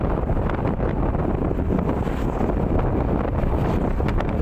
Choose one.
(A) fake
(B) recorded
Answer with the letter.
B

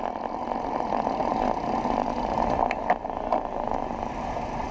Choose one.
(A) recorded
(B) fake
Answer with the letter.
A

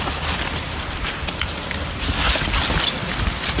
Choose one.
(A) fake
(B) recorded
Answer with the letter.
B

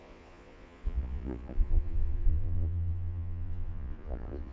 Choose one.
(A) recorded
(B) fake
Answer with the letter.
B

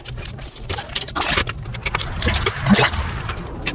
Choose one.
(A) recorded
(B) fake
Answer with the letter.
B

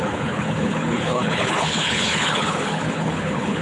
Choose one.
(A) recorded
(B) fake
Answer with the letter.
B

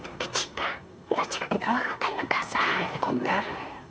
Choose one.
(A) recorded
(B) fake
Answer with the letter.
B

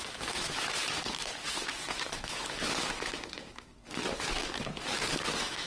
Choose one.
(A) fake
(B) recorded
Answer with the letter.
A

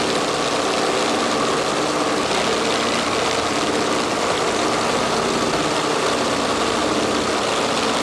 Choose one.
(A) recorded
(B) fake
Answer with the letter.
A